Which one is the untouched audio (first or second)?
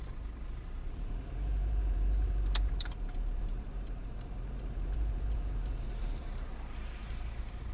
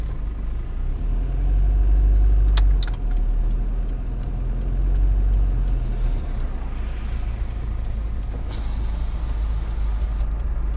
second